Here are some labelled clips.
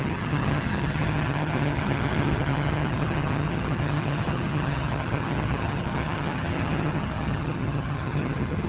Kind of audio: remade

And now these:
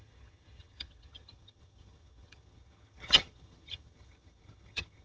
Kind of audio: remade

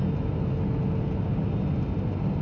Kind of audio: recorded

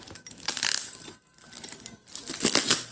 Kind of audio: recorded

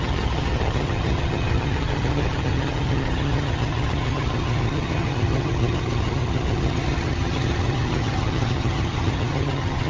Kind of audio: remade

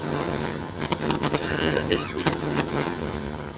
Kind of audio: remade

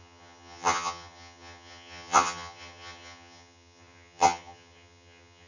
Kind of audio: remade